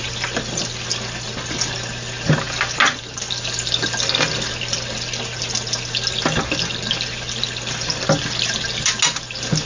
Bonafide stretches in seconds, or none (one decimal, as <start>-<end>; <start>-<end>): 0.0-9.7